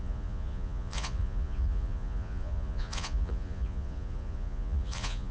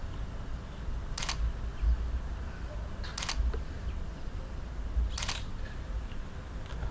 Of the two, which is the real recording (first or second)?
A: second